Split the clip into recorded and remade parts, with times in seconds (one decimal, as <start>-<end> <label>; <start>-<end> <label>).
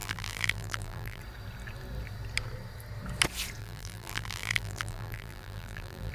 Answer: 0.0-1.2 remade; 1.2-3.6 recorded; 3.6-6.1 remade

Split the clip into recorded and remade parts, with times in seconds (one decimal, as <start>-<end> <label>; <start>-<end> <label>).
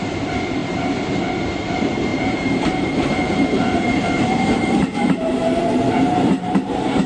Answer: 0.0-7.1 remade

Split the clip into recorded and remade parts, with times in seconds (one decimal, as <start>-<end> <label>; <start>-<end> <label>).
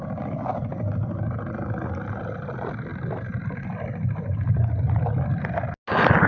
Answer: 0.0-6.3 recorded